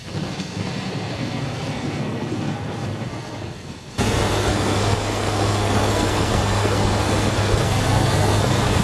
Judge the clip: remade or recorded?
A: remade